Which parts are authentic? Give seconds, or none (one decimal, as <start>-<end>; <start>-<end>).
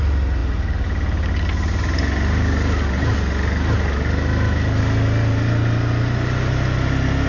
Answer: 0.0-7.3